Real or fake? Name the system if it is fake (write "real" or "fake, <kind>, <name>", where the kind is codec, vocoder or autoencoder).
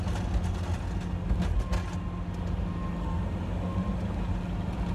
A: real